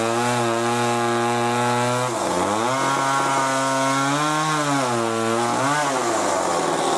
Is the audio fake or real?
real